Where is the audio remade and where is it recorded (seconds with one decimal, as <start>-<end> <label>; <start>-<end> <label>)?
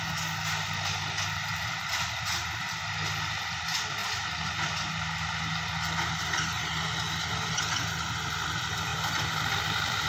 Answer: 0.0-10.1 recorded